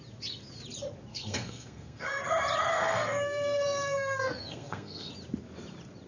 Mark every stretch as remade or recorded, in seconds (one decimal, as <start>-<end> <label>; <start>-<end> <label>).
0.0-1.1 recorded; 1.1-2.2 remade; 2.2-2.7 recorded; 2.7-5.1 remade; 5.1-6.1 recorded